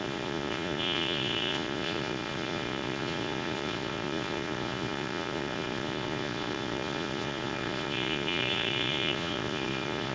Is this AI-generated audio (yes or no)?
yes